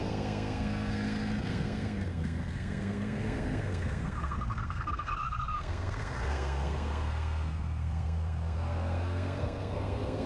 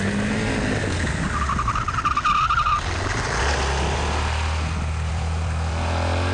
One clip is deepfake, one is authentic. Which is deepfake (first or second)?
first